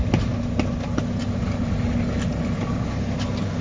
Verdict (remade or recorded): recorded